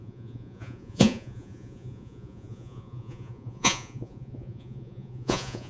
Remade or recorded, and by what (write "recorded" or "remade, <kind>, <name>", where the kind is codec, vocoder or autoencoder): remade, vocoder, Vocos